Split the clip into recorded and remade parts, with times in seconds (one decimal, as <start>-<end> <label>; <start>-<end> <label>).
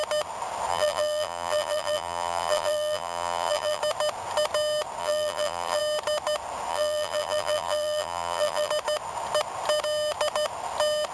0.0-0.7 recorded; 0.7-3.8 remade; 3.8-5.0 recorded; 5.0-5.8 remade; 5.8-6.7 recorded; 6.7-8.7 remade; 8.7-11.1 recorded